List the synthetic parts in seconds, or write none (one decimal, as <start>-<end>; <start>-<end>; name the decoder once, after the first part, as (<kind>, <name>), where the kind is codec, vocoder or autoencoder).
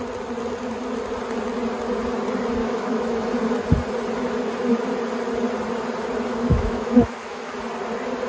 2.6-3.3 (autoencoder, DAC-VAE); 6.3-7.5